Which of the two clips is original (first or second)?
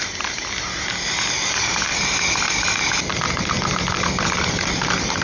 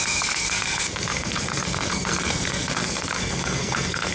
first